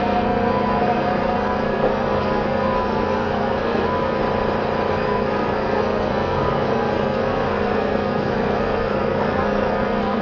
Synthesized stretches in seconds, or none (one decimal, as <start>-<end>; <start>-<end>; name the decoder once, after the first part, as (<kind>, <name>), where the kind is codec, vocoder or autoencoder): 0.0-4.2 (codec, SNAC); 4.9-10.2